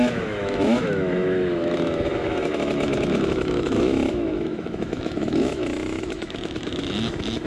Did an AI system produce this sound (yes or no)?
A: yes